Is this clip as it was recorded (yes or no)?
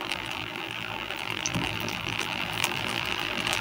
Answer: no